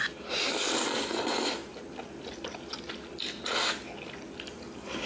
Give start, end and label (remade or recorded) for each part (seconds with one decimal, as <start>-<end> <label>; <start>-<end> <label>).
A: 0.0-5.1 recorded